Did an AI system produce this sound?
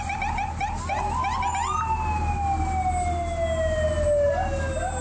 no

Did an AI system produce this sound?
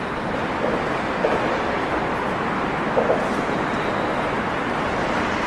no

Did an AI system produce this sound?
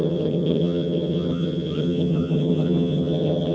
yes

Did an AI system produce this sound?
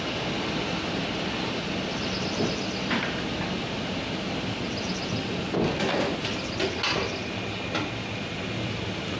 no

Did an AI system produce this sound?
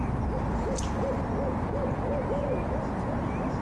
no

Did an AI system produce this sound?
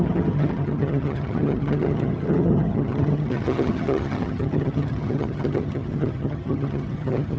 yes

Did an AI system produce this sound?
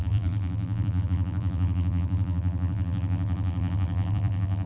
yes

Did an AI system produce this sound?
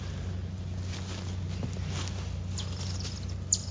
no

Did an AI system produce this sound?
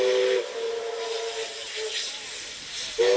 no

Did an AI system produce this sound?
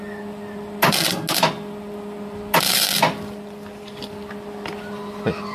no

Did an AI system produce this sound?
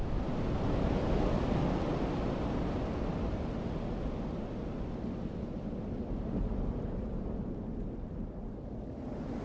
no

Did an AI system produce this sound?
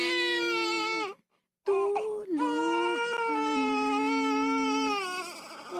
no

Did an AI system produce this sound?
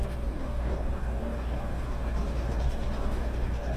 yes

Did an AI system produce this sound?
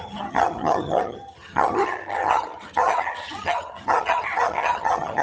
yes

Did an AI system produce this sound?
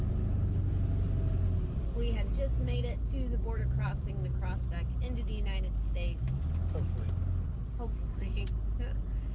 no